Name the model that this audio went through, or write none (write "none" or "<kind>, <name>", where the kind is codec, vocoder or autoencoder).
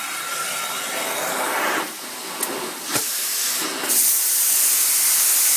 none